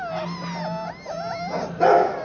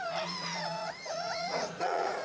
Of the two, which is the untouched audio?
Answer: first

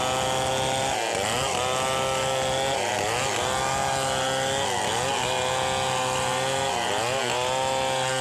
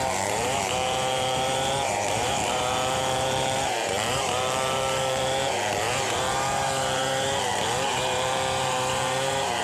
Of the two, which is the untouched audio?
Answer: first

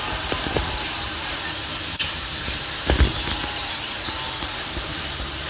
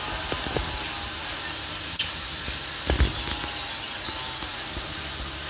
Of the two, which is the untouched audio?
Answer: second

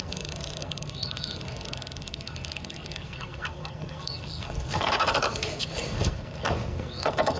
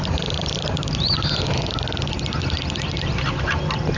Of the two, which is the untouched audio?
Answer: second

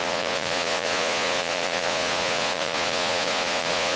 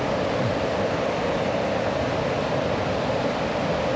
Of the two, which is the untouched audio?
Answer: second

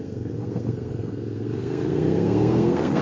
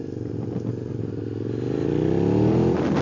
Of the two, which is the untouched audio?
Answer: second